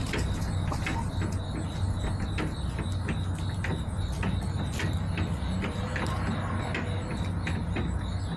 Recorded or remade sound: recorded